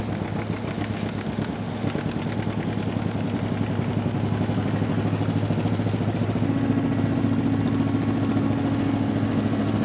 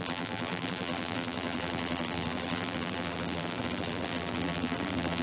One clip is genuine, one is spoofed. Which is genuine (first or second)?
first